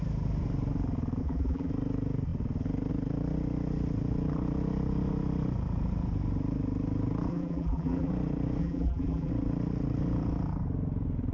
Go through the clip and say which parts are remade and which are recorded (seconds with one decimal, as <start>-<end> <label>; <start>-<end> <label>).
0.0-1.2 recorded; 1.2-1.7 remade; 1.7-7.3 recorded; 7.3-8.1 remade; 8.1-8.6 recorded; 8.6-9.3 remade; 9.3-11.3 recorded